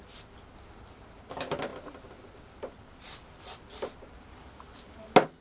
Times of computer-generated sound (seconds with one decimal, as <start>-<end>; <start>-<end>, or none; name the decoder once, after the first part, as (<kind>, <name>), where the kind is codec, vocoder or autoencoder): none